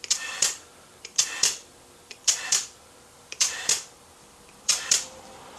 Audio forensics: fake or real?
fake